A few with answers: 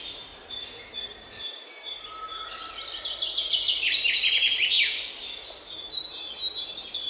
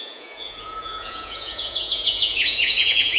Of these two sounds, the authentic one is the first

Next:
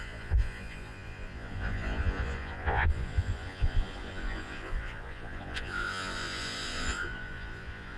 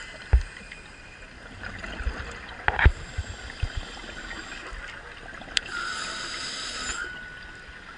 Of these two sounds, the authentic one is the second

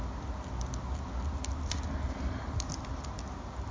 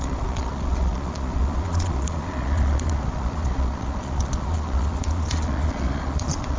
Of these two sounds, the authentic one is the first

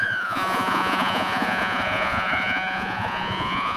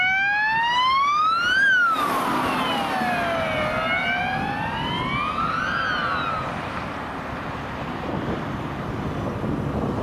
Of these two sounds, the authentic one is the second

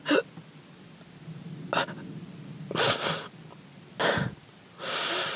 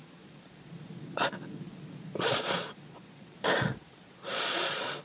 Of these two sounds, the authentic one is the first